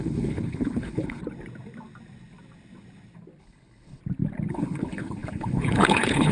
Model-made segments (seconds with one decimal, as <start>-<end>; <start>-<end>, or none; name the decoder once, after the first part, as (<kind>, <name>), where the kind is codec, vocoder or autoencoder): 0.0-1.2 (codec, HILCodec); 3.4-4.0; 4.5-6.3